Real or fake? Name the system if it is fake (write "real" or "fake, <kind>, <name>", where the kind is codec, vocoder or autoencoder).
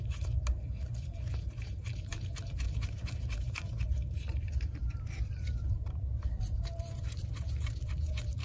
fake, vocoder, BigVGAN v2